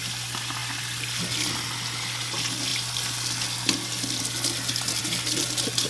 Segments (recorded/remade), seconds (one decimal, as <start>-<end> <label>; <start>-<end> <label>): 0.0-0.6 recorded; 0.6-1.2 remade; 1.2-2.7 recorded; 2.7-4.2 remade; 4.2-5.0 recorded; 5.0-5.9 remade